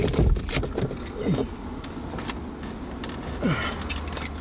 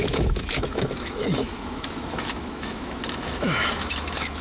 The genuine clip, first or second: first